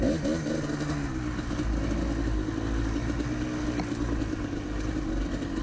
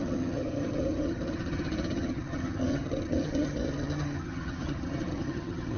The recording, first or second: first